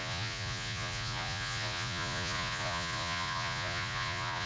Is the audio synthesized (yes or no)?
yes